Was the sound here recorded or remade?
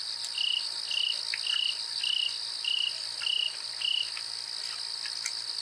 recorded